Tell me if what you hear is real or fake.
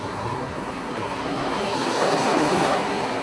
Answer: fake